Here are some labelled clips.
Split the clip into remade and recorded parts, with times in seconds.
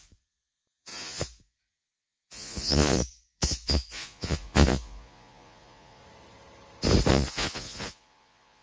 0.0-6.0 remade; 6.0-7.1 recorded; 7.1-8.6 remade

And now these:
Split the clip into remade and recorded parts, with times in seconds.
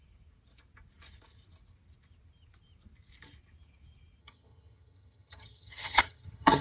0.0-4.2 recorded; 4.2-6.6 remade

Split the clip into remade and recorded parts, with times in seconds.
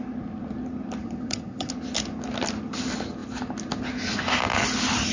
0.0-1.0 recorded; 1.0-1.7 remade; 1.7-5.1 recorded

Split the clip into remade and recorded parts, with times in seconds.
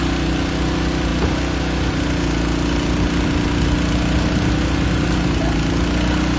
0.0-6.4 recorded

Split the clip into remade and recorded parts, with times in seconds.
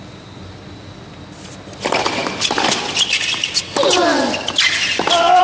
0.0-5.4 recorded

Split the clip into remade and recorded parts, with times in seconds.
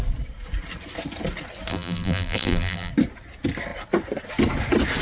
0.0-1.7 recorded; 1.7-2.9 remade; 2.9-5.0 recorded